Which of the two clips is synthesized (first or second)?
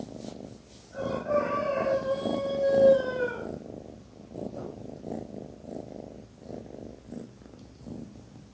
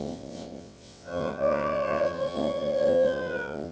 second